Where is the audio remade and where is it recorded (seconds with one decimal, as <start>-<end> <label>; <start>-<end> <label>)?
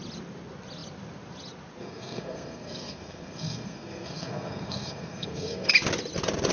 0.0-1.8 recorded; 1.8-5.7 remade; 5.7-6.5 recorded